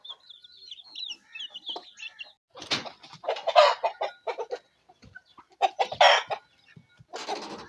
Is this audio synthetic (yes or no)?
no